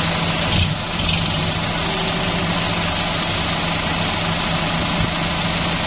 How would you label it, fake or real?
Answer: real